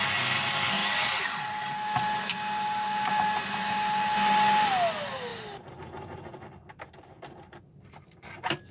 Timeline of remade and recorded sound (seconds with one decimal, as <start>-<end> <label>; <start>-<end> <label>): 0.0-8.7 recorded